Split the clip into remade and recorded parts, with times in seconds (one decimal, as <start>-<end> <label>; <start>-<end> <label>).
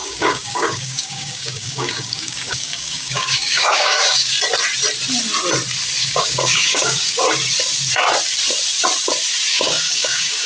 0.0-4.3 remade; 4.3-6.0 recorded; 6.0-7.2 remade; 7.2-9.5 recorded; 9.5-10.5 remade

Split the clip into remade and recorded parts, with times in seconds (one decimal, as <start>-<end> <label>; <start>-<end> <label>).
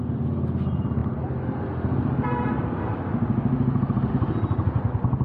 0.0-5.2 recorded